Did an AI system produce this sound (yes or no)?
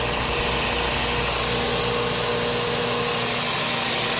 no